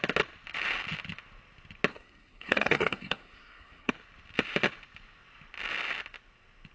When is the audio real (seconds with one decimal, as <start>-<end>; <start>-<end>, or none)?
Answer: 0.0-1.9; 3.9-6.7

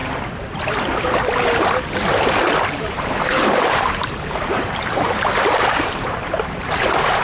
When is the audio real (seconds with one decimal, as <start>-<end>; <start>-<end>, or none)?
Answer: 0.0-2.8

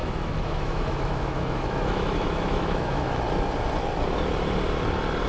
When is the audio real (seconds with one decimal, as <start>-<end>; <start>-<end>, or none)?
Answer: 3.2-5.3

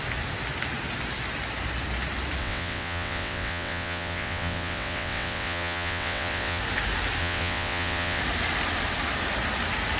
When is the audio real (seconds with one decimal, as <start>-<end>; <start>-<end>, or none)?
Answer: 0.0-2.4; 6.6-7.2; 8.2-10.0